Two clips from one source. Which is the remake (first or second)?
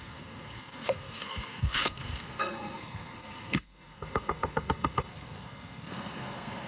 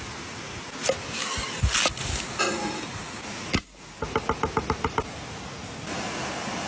first